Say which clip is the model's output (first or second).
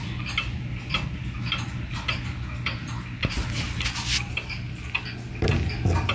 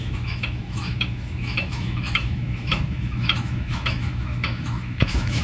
second